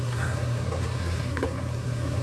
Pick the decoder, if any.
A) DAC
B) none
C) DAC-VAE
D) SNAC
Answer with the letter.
D